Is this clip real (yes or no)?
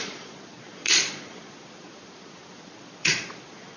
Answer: no